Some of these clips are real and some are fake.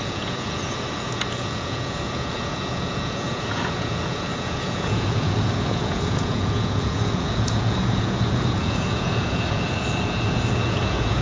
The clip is fake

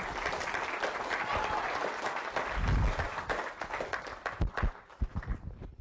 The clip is real